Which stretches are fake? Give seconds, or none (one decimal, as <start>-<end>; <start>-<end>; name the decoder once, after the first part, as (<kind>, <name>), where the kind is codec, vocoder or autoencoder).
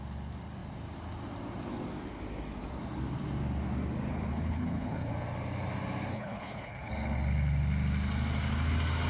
4.3-5.1 (codec, HILCodec); 6.1-6.9